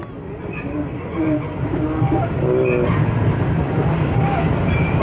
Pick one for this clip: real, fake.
real